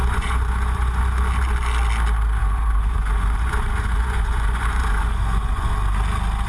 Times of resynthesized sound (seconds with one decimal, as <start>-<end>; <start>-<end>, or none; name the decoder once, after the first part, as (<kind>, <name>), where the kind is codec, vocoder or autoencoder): 0.0-1.0 (vocoder, Vocos); 2.4-5.7